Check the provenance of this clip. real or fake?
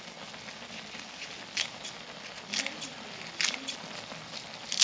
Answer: real